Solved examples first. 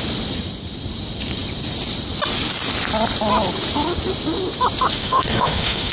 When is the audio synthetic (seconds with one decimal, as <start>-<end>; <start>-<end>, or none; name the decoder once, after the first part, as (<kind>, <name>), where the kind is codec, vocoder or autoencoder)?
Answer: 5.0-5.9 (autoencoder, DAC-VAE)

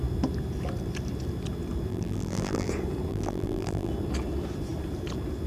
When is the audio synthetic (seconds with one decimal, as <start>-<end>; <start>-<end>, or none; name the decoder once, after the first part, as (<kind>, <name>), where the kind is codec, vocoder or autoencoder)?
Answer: 1.9-2.7 (vocoder, BigVGAN v2); 3.1-3.9

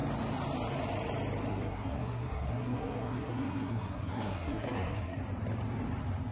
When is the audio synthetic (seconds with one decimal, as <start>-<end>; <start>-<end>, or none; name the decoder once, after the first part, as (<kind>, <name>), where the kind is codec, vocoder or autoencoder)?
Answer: 1.5-5.2 (codec, SNAC)

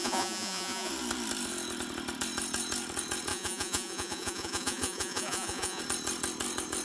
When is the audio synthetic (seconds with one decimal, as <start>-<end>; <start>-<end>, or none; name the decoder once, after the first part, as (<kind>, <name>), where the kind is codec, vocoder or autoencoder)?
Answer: 0.0-0.9 (vocoder, Vocos); 3.3-5.8

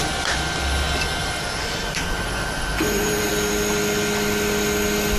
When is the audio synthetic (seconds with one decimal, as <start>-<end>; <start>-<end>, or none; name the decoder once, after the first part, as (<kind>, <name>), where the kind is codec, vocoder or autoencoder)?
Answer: 1.2-3.3 (vocoder, BigVGAN v2)

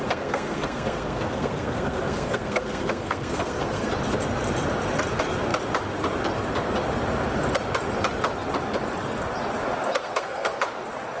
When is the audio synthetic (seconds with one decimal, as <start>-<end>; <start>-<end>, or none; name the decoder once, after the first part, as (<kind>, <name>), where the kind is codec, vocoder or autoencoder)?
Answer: 0.0-3.9 (codec, SNAC); 10.0-10.6

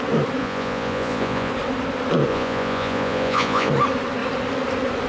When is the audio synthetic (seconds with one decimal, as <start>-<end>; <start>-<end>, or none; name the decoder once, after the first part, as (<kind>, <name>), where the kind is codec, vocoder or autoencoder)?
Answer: 0.4-1.5 (vocoder, Vocos); 2.3-3.7

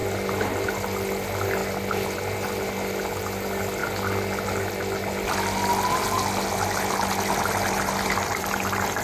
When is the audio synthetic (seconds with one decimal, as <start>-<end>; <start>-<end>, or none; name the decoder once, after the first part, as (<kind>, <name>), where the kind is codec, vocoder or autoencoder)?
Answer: 0.7-1.6 (vocoder, BigVGAN v2); 3.1-3.8; 8.4-9.0